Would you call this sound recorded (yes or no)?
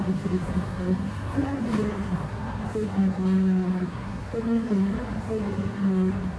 no